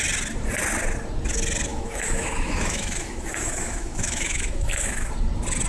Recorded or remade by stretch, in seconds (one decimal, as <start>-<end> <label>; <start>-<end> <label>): 0.0-1.7 recorded; 1.7-5.1 remade; 5.1-5.7 recorded